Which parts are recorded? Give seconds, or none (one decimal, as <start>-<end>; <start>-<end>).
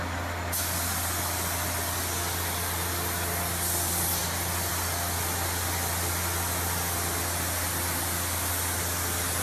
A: 0.0-9.4